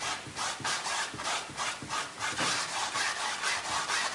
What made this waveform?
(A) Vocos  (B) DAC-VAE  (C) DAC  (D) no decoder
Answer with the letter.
D